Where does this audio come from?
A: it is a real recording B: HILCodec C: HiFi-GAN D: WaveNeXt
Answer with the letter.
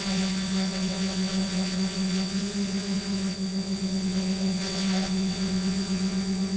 D